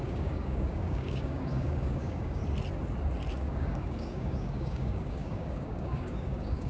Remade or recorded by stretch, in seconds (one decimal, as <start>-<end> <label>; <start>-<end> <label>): 0.0-2.4 remade; 2.4-3.4 recorded; 3.4-6.7 remade